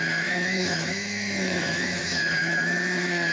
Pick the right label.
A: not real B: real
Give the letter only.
A